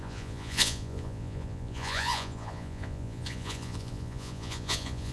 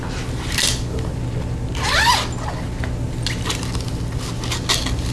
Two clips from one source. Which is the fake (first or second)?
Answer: first